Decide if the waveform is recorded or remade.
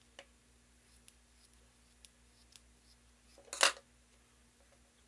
recorded